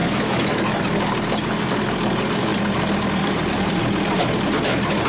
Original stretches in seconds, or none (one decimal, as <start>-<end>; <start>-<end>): 0.8-5.1